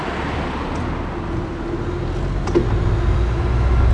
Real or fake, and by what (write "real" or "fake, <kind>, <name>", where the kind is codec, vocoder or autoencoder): real